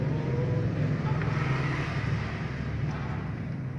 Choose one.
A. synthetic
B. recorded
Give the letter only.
B